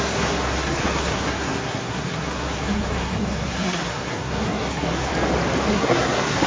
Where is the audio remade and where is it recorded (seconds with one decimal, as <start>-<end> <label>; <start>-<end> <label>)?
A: 0.0-5.1 remade; 5.1-5.7 recorded; 5.7-6.5 remade